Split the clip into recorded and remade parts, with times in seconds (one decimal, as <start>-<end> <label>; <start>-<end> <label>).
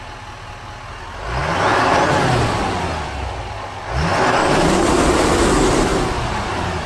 0.0-4.4 recorded; 4.4-5.5 remade; 5.5-5.9 recorded; 5.9-6.9 remade